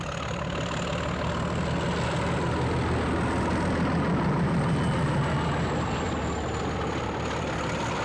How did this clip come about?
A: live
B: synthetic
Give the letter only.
A